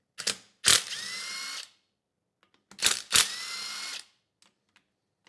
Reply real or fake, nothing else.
real